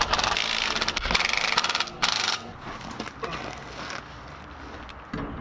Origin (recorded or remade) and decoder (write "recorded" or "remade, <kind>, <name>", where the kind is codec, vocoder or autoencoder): recorded